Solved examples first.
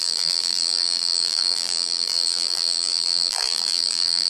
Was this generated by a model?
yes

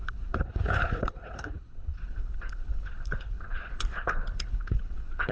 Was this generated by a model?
yes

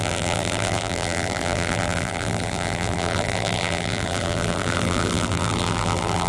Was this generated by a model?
yes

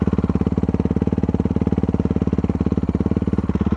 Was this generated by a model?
no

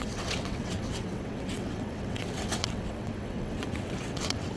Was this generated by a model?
yes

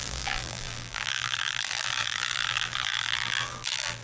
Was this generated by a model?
yes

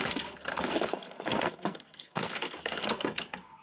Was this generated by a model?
yes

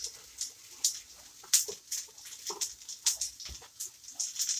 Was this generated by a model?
no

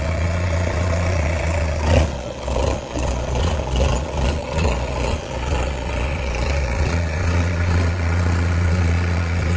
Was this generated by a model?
yes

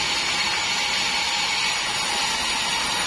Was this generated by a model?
no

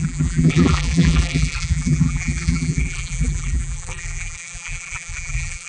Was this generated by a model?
yes